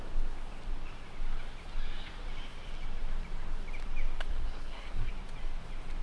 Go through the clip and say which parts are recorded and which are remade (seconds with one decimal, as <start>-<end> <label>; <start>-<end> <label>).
0.0-4.3 recorded; 4.3-5.1 remade; 5.1-6.0 recorded